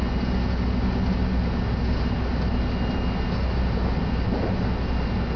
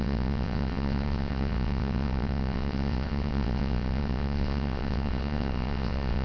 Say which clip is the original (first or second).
first